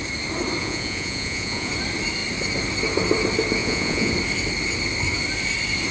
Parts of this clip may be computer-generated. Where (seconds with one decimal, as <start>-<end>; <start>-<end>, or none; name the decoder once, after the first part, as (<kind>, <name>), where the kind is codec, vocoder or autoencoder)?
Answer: 0.6-1.7 (vocoder, Vocos); 3.6-4.1